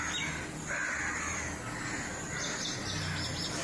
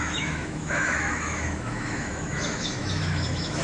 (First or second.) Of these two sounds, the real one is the first